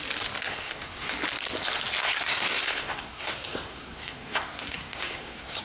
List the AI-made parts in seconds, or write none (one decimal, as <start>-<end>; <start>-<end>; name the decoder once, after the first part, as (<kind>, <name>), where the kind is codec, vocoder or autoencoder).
0.5-1.1 (codec, SNAC); 2.0-5.6